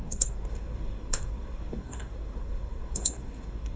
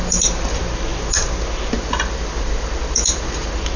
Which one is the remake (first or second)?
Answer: first